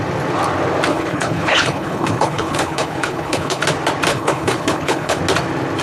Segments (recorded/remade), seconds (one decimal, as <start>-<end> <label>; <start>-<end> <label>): 0.0-0.9 recorded; 0.9-3.6 remade; 3.6-4.1 recorded; 4.1-5.2 remade; 5.2-5.8 recorded